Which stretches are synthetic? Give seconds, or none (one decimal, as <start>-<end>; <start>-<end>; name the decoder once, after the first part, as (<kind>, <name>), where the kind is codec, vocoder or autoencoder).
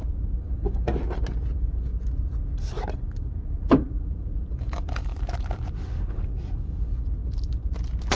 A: 0.0-0.9 (vocoder, BigVGAN v2); 1.5-1.9; 2.9-5.1; 6.1-7.2